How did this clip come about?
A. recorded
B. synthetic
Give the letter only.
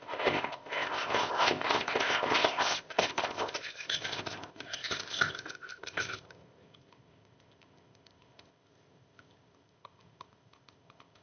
B